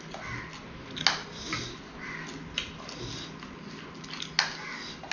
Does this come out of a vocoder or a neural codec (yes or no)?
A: no